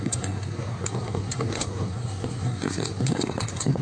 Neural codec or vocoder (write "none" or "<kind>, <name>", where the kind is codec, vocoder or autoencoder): codec, SNAC